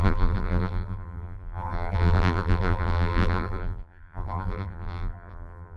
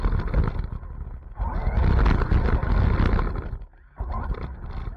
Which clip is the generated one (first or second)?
first